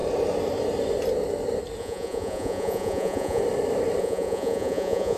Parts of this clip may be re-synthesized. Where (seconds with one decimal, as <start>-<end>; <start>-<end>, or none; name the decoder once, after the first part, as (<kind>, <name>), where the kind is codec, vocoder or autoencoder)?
1.8-3.4 (vocoder, Vocos); 4.0-5.2